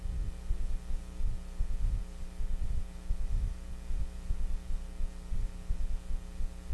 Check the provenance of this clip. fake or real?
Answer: real